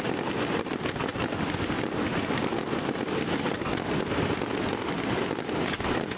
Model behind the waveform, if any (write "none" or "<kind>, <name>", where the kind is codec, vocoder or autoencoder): none